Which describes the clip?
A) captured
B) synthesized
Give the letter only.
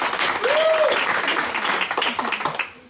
A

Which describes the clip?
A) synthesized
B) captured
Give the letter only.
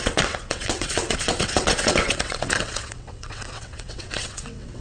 A